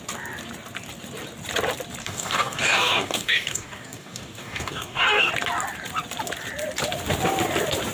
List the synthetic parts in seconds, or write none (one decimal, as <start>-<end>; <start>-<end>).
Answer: 2.0-5.3